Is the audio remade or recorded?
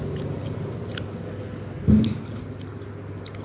recorded